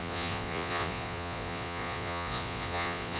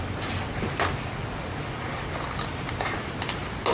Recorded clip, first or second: second